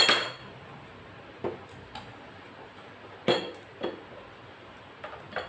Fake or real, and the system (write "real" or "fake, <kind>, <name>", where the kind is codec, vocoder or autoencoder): real